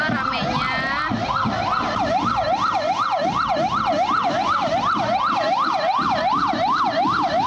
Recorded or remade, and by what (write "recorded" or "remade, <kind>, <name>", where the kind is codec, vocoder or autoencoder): remade, vocoder, BigVGAN v2